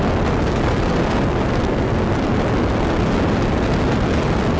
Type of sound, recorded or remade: recorded